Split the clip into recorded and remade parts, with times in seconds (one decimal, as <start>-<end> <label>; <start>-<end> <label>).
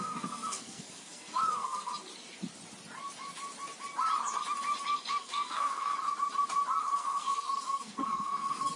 0.0-1.9 remade; 1.9-5.1 recorded; 5.1-5.9 remade; 5.9-6.8 recorded; 6.8-8.8 remade